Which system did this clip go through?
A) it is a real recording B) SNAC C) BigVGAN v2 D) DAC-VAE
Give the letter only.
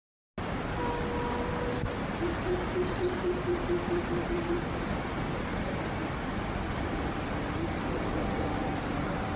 A